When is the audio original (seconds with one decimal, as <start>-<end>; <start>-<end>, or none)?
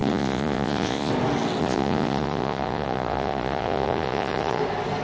1.1-1.6; 4.6-5.0